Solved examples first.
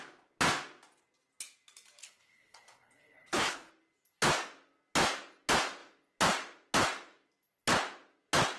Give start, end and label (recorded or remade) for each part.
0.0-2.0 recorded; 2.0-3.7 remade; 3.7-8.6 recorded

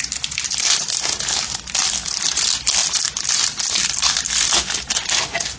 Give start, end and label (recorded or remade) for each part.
0.0-5.6 recorded

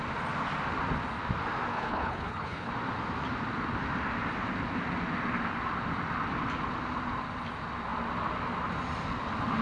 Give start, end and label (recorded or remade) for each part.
0.0-1.7 recorded; 1.7-2.7 remade; 2.7-9.6 recorded

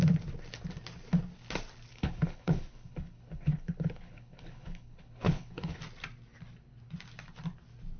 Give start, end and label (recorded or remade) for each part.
0.0-1.9 recorded; 1.9-5.8 remade; 5.8-8.0 recorded